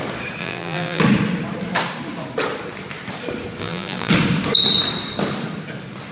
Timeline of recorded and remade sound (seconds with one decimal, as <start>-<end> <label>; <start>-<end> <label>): 0.0-0.4 recorded; 0.4-1.0 remade; 1.0-3.6 recorded; 3.6-4.1 remade; 4.1-6.1 recorded